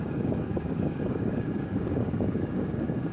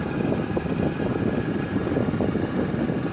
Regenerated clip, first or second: first